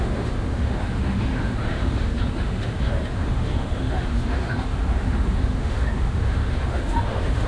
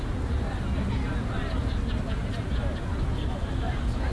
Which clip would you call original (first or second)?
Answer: second